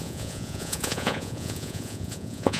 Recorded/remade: remade